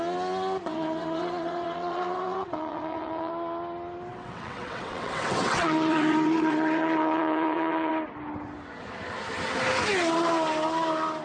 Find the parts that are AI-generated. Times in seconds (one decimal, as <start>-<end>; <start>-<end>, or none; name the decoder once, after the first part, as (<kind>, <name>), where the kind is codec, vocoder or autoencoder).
0.7-3.3 (vocoder, WaveNeXt); 4.1-7.9